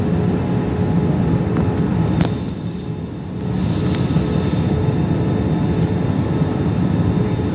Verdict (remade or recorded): recorded